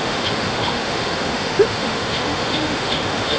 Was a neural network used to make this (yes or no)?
yes